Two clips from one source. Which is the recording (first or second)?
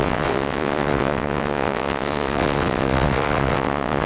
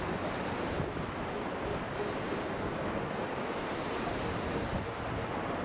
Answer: second